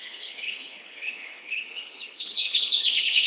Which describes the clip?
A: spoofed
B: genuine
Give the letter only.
A